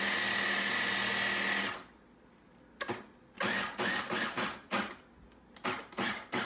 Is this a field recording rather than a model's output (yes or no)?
yes